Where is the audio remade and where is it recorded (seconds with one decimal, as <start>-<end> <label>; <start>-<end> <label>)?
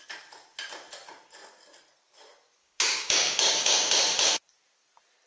0.0-2.6 recorded; 2.6-3.9 remade; 3.9-5.3 recorded